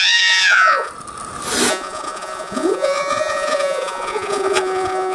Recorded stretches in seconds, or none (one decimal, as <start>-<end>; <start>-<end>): 0.9-1.7